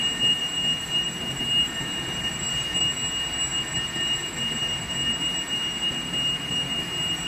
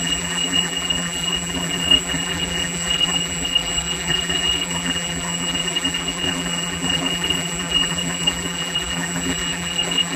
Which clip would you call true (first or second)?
first